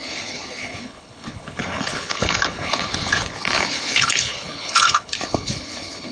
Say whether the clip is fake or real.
fake